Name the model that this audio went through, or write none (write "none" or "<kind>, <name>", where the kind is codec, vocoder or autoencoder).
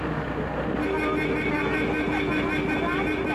none